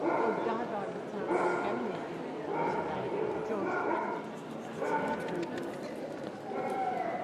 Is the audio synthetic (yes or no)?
no